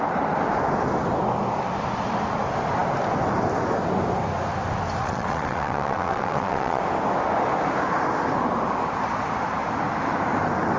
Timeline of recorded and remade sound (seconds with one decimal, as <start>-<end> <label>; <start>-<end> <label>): 0.0-5.0 recorded; 5.0-6.8 remade; 6.8-10.8 recorded